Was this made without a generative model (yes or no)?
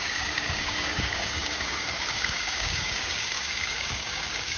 no